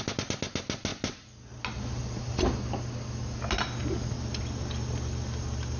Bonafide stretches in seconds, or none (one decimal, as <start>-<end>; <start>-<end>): 0.0-5.8